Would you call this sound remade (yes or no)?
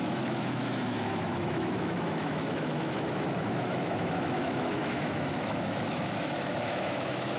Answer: yes